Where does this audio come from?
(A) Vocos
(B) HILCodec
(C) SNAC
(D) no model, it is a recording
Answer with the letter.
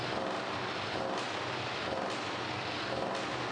D